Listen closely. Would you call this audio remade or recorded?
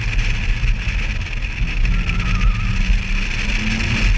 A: recorded